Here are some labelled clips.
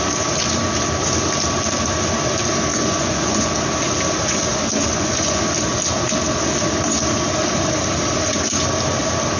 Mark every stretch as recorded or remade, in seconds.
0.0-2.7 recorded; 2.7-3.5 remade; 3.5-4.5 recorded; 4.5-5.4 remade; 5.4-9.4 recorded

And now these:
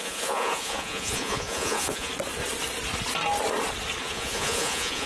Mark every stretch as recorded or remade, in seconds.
0.0-2.1 remade; 2.1-4.0 recorded; 4.0-5.1 remade

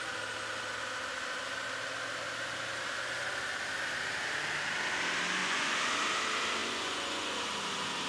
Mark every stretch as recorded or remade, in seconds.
0.0-5.4 recorded; 5.4-5.9 remade; 5.9-6.6 recorded; 6.6-7.4 remade; 7.4-8.1 recorded

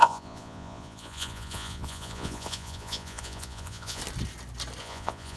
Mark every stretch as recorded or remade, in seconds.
0.0-4.0 remade; 4.0-4.8 recorded; 4.8-5.4 remade

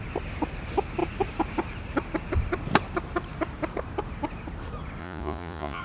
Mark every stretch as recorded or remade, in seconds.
0.0-5.0 recorded; 5.0-5.8 remade

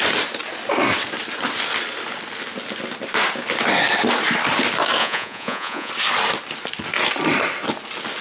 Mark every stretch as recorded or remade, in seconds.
0.0-5.0 recorded; 5.0-5.9 remade; 5.9-8.2 recorded

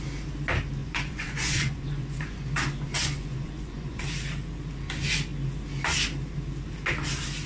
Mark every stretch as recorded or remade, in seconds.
0.0-0.8 recorded; 0.8-4.0 remade; 4.0-7.5 recorded

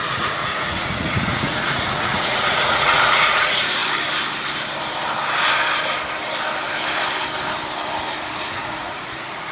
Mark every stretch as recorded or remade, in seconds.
0.0-3.8 remade; 3.8-8.5 recorded; 8.5-9.5 remade